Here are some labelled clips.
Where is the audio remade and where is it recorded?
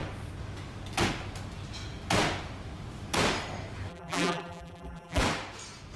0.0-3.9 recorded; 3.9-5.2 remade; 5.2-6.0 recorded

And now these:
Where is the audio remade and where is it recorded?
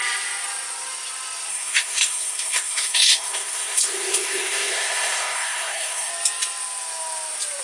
0.0-1.5 recorded; 1.5-6.1 remade; 6.1-7.6 recorded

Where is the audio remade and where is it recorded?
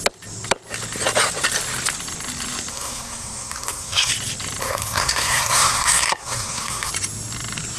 0.0-2.7 recorded; 2.7-4.1 remade; 4.1-4.6 recorded; 4.6-6.9 remade; 6.9-7.8 recorded